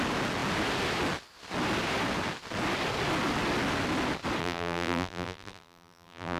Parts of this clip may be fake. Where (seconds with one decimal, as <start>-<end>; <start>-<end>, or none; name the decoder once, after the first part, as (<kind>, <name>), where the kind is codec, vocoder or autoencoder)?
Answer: 4.4-6.4 (vocoder, BigVGAN v2)